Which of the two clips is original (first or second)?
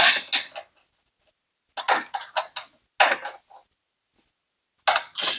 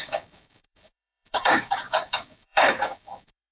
first